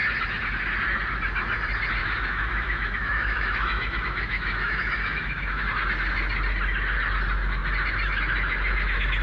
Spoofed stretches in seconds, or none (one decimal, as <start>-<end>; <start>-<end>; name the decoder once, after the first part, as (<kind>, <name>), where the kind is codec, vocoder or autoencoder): 2.0-5.6 (autoencoder, DAC-VAE)